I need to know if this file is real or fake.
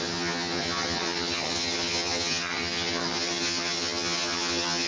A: fake